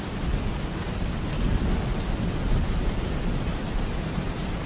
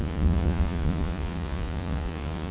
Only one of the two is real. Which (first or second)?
first